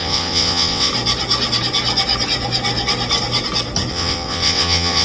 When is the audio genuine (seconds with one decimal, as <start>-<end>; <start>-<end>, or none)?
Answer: 0.9-3.9